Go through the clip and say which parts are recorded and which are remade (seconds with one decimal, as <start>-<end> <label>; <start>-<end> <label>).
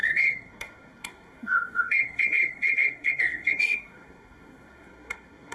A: 0.0-5.5 remade